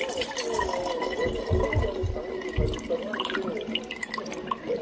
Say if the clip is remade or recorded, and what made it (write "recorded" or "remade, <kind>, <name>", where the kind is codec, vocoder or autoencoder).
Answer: recorded